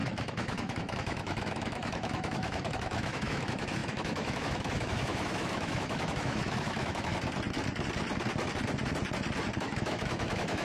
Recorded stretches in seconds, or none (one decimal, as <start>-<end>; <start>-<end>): 7.1-9.6